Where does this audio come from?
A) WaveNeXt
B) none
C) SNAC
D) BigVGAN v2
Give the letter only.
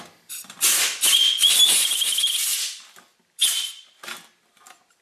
D